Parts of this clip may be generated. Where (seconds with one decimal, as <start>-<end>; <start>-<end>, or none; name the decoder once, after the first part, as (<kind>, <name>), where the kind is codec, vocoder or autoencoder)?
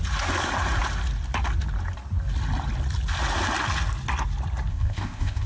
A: 4.7-5.5 (codec, ZipCodec)